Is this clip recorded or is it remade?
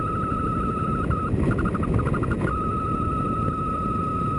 recorded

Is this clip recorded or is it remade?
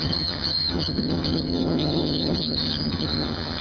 remade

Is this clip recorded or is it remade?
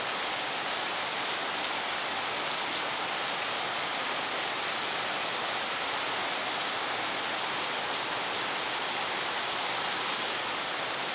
recorded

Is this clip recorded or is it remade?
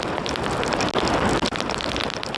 recorded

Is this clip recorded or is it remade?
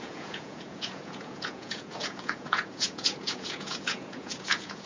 remade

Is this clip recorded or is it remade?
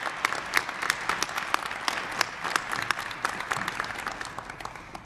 recorded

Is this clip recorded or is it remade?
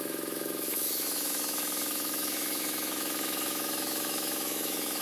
remade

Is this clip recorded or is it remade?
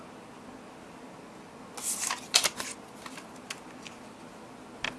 recorded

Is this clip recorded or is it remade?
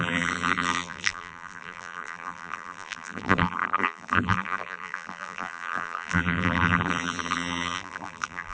remade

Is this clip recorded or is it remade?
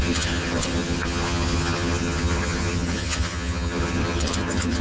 remade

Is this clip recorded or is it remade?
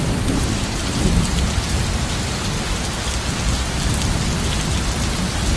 recorded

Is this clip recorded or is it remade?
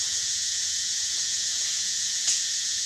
remade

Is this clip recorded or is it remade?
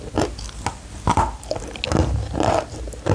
recorded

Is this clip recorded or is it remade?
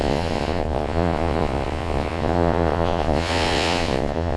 remade